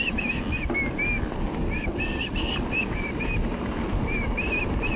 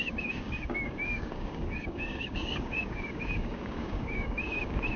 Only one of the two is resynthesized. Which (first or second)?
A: second